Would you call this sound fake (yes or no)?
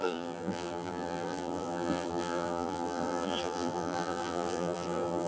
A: yes